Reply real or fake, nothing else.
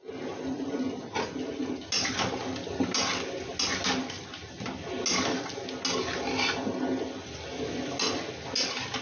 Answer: real